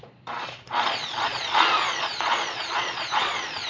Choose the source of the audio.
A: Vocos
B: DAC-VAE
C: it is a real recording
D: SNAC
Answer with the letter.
A